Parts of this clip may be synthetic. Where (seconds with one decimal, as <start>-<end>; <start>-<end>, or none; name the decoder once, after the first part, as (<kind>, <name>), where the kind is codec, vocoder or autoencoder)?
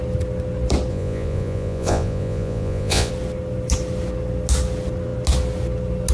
0.9-3.1 (vocoder, Vocos)